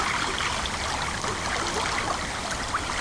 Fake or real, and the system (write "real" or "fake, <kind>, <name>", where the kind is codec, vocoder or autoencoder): real